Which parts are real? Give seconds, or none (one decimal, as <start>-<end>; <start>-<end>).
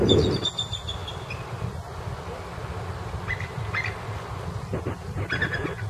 0.0-5.9